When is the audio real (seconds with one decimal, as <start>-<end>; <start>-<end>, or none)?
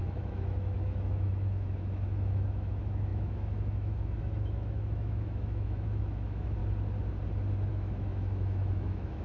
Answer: 6.6-7.7